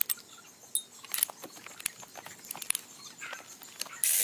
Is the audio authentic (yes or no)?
yes